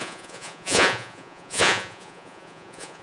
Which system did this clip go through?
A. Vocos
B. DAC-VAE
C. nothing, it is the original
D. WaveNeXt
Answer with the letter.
A